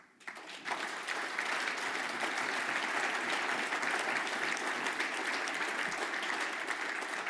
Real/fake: real